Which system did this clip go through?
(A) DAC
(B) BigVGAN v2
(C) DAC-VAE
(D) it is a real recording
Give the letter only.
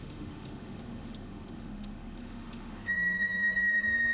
C